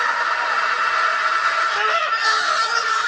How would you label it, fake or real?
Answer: real